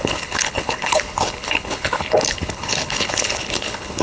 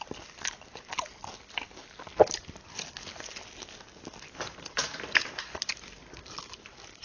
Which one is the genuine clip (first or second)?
second